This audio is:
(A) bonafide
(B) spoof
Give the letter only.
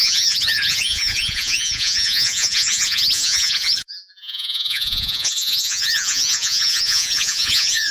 B